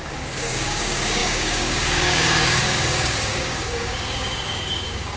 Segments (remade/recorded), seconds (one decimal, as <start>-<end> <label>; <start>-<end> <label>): 0.0-5.2 remade